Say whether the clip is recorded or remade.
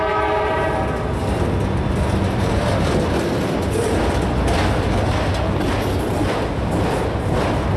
recorded